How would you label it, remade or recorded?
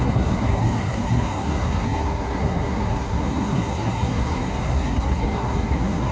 remade